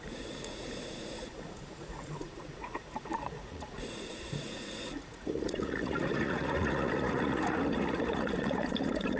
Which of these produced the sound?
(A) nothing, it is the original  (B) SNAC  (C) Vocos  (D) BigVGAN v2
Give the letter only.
C